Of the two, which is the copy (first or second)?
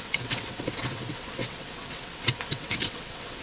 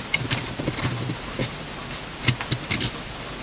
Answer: first